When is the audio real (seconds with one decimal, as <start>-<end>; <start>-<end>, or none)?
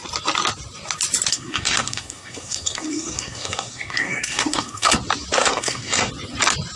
0.0-1.3; 5.0-5.4; 6.1-6.8